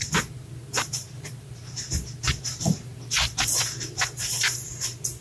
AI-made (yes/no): yes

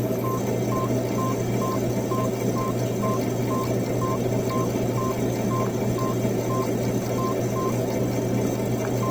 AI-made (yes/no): no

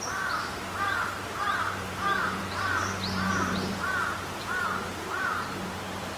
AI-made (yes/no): yes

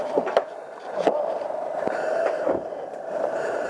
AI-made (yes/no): yes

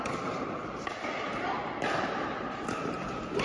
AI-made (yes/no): yes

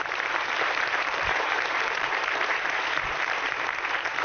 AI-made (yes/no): yes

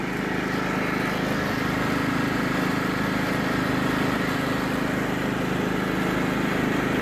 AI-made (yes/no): no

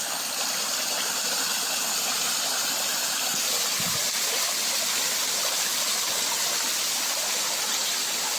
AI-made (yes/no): no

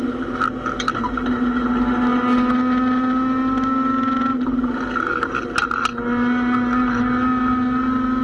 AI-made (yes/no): no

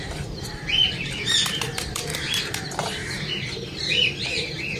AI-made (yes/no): yes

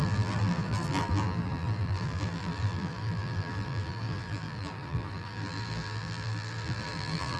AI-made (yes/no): yes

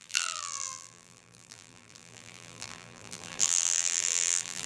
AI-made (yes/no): yes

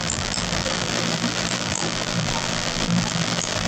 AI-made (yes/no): yes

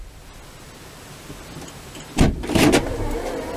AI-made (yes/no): no